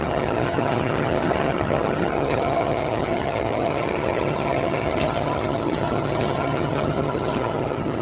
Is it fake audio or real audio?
fake